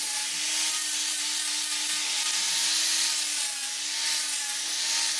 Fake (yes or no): no